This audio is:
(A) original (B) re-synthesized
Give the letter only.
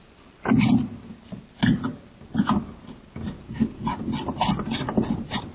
A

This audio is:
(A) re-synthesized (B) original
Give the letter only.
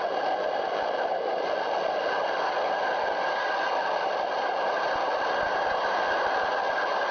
B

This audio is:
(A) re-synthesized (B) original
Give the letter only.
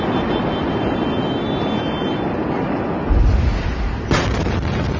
B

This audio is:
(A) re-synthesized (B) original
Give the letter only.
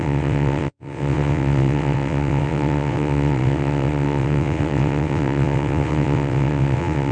A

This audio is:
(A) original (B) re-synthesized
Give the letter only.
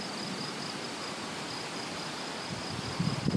A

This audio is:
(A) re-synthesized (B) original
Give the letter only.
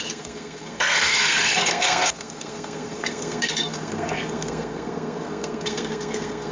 A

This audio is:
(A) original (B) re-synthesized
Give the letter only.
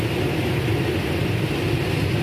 A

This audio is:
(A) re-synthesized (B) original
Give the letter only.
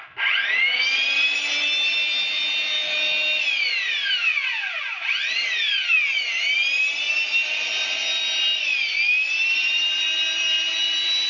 B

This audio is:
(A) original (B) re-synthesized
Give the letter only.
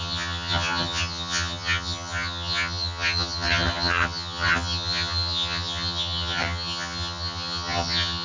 B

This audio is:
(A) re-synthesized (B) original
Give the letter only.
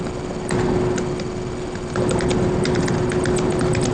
B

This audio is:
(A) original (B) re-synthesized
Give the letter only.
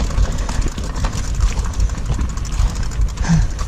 A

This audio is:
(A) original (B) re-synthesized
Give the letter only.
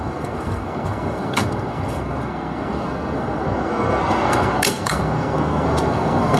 B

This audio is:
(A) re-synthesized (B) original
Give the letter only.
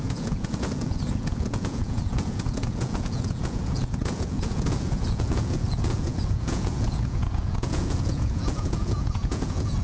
A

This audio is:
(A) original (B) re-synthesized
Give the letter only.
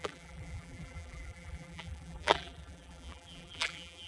B